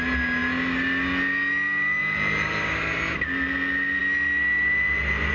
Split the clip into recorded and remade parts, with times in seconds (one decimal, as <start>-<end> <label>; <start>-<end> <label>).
0.0-5.3 recorded